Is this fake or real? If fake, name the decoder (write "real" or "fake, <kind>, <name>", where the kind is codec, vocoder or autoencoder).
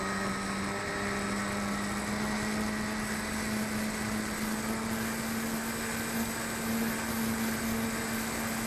real